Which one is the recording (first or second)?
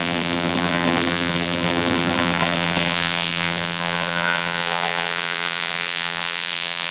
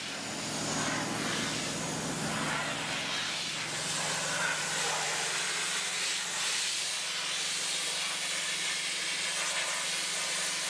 second